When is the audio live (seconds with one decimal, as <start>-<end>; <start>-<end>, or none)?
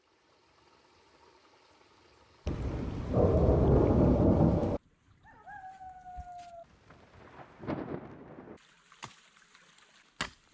0.0-10.5